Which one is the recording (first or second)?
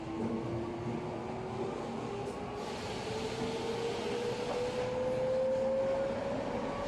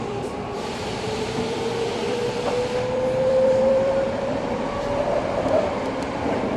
first